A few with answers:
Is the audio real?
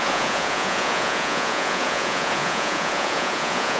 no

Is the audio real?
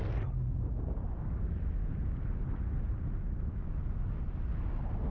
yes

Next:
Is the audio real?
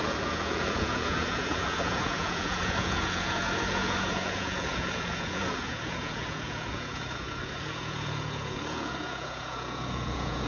no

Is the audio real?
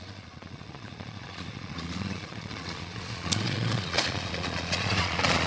no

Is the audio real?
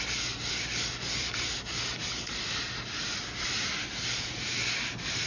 yes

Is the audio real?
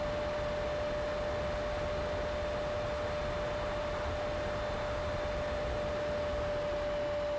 yes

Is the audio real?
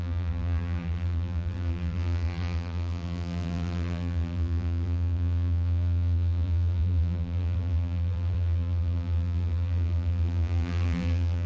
no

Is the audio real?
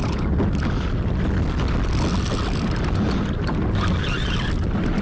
yes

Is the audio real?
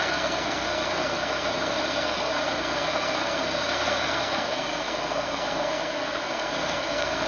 no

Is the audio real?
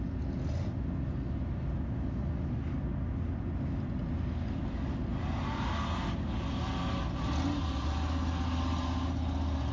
yes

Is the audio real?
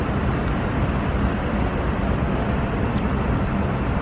yes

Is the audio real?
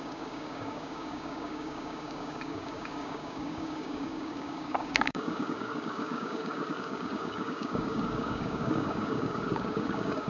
no